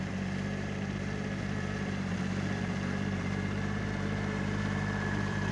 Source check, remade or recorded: remade